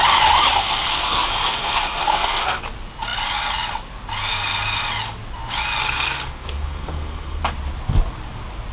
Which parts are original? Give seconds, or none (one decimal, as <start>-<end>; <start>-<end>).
0.0-0.6; 2.6-5.8; 7.4-8.7